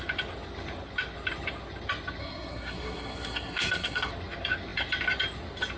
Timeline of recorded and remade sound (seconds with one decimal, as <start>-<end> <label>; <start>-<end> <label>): 0.0-2.2 recorded; 2.2-4.1 remade; 4.1-5.8 recorded